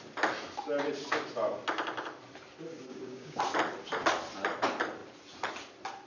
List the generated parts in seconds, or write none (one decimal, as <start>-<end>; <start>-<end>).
2.9-3.4

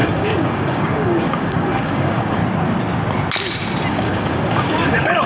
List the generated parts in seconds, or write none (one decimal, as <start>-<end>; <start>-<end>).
0.0-2.4; 3.9-5.3

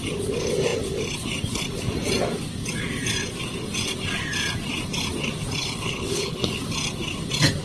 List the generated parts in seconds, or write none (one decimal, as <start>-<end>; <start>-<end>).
5.6-6.6